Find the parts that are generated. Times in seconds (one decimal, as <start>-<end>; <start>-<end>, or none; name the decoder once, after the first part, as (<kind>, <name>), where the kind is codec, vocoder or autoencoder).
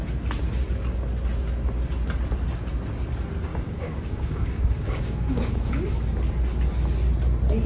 3.5-5.7 (codec, DAC)